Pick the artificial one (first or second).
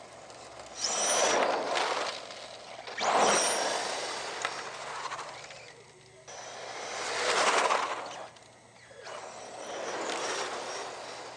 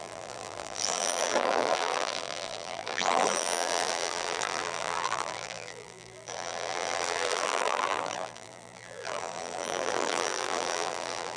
second